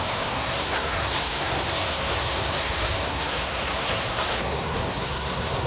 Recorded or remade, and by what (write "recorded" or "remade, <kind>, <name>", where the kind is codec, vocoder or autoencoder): remade, codec, SNAC